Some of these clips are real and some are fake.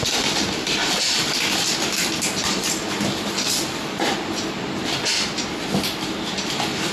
fake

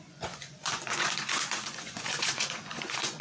fake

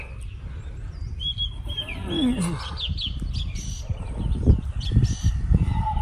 real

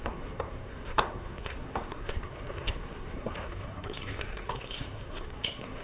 fake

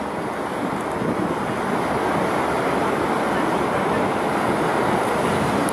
real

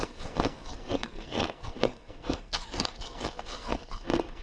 fake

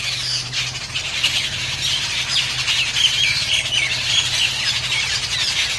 real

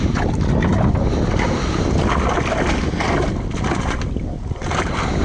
real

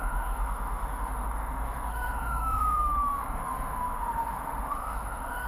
fake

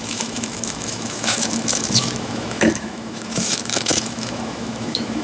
fake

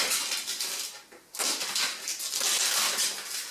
real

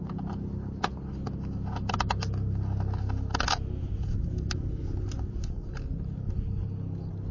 real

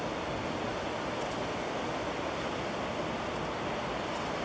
real